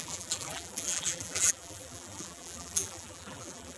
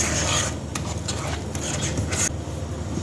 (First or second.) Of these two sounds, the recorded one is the second